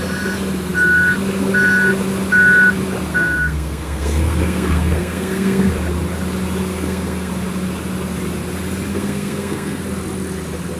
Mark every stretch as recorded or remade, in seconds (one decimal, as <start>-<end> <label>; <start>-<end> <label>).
0.0-3.1 recorded; 3.1-5.7 remade; 5.7-6.7 recorded; 6.7-7.3 remade; 7.3-8.9 recorded; 8.9-9.8 remade; 9.8-10.8 recorded